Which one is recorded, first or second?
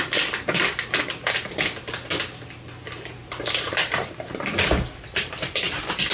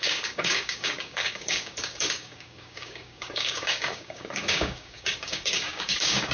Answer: first